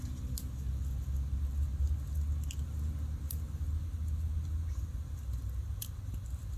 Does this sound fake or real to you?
real